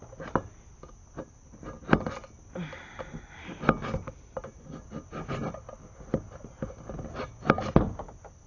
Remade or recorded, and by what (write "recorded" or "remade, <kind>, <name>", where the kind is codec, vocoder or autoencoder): recorded